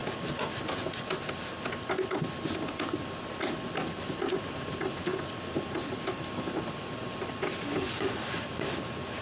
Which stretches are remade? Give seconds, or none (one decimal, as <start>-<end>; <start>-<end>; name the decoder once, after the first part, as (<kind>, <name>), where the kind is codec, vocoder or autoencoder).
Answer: 4.5-5.1 (vocoder, BigVGAN v2); 6.1-9.2